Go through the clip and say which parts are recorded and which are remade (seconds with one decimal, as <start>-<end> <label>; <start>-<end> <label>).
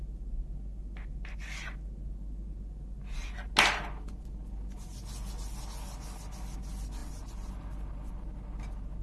0.0-9.0 recorded